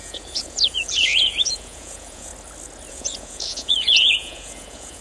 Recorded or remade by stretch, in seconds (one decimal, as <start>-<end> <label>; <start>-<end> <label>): 0.0-2.3 remade; 2.3-2.9 recorded; 2.9-5.0 remade